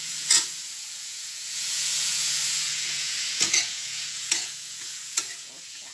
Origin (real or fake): fake